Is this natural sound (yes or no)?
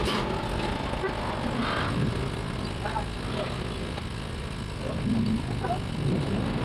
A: yes